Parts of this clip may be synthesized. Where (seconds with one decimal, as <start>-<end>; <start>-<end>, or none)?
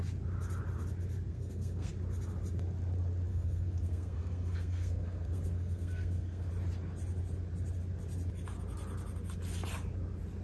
1.3-1.9; 3.3-6.5